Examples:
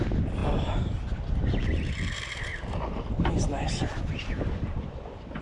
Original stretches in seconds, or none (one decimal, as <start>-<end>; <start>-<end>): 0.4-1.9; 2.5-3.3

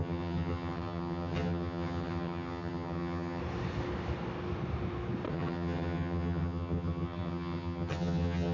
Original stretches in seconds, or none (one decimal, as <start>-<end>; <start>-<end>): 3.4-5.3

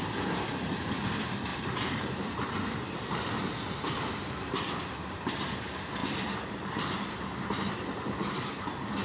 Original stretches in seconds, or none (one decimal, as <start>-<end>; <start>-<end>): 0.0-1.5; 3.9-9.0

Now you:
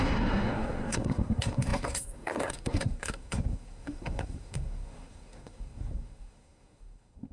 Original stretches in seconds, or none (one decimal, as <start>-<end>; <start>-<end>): none